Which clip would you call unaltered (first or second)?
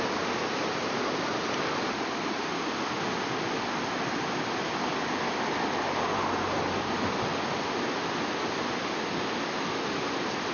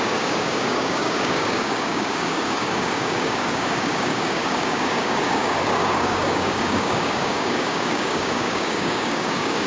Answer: first